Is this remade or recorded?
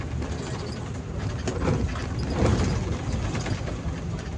recorded